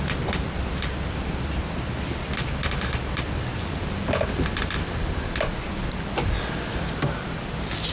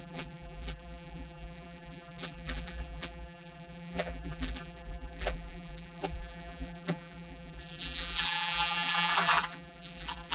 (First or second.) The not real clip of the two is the second